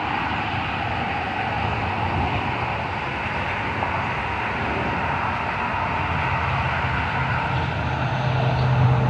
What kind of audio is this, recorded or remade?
recorded